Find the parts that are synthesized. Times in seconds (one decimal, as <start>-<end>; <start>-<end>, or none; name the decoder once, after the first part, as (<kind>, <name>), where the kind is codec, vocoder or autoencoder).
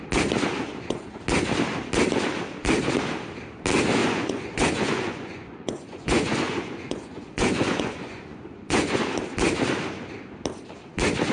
0.7-1.2 (vocoder, Vocos); 4.0-9.0